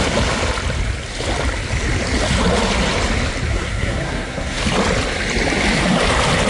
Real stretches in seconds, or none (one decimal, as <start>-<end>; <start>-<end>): 0.0-3.5; 4.6-6.5